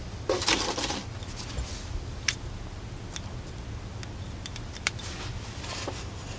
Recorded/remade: recorded